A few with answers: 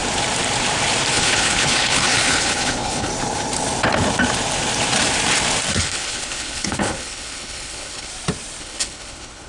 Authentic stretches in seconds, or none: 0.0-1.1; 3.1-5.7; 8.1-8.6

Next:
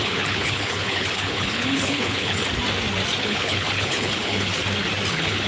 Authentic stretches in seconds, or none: 2.4-3.2; 4.5-5.1

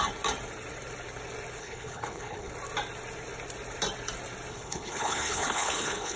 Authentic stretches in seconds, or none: 0.0-1.6; 2.5-4.5

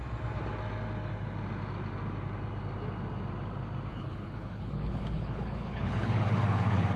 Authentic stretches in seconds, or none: 0.0-3.9

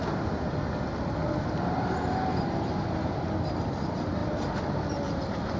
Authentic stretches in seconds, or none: 0.0-5.6

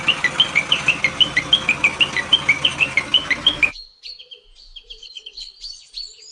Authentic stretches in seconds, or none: 0.0-5.0; 5.5-6.3

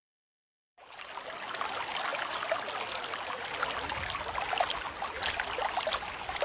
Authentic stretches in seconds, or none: 1.1-6.4

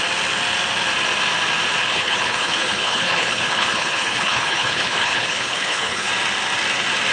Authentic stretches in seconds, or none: 0.0-1.8; 6.1-7.1